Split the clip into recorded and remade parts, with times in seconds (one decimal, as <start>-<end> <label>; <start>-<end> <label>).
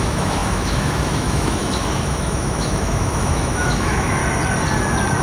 0.0-4.2 remade; 4.2-5.2 recorded